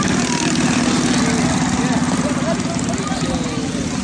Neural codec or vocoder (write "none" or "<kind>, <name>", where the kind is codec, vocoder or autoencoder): none